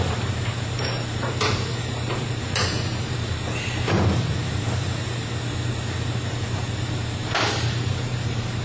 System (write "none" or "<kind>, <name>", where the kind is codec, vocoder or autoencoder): vocoder, BigVGAN v2